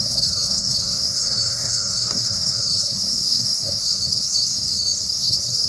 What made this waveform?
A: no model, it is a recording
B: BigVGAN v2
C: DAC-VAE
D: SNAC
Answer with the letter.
D